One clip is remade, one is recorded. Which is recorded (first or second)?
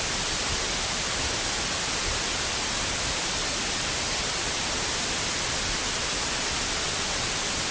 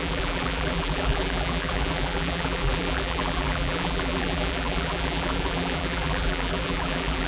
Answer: first